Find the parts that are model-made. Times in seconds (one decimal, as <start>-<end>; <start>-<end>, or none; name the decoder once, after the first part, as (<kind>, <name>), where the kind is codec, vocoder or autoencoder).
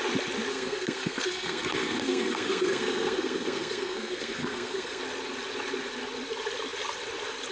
0.5-5.0 (codec, SNAC)